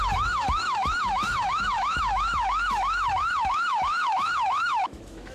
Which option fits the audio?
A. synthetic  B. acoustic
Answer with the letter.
A